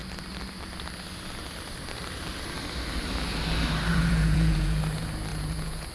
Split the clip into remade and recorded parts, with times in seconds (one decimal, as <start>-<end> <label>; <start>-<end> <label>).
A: 0.0-3.9 recorded; 3.9-4.8 remade; 4.8-5.3 recorded; 5.3-5.9 remade